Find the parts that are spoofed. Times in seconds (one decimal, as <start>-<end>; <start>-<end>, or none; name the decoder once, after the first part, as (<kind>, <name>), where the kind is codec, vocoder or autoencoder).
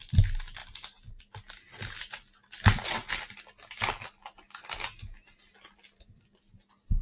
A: none